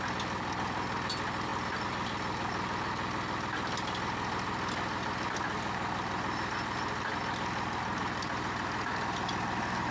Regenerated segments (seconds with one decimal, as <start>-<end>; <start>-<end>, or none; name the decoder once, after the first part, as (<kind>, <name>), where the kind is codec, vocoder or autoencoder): none